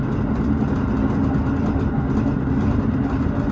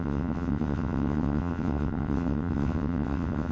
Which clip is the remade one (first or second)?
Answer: second